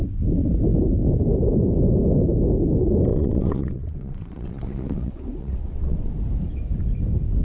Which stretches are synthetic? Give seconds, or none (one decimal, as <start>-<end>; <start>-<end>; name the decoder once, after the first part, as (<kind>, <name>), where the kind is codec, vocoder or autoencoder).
3.1-6.1 (vocoder, WaveNeXt)